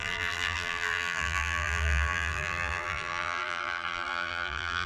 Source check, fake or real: fake